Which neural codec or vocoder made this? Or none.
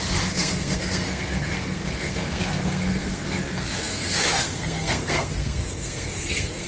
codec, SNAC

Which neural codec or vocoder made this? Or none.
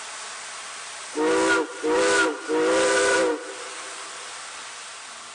none